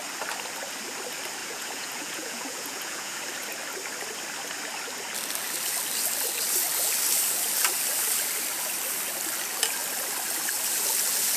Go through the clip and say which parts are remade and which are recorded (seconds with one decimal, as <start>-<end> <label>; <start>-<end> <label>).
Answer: 0.0-1.4 recorded; 1.4-3.2 remade; 3.2-11.4 recorded